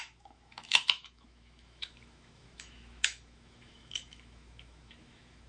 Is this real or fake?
fake